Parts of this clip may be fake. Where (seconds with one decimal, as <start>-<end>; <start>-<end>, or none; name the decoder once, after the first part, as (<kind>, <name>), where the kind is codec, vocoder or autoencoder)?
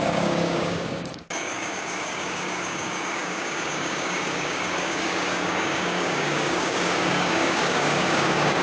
0.0-8.6 (codec, DAC)